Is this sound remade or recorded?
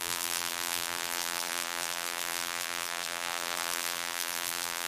remade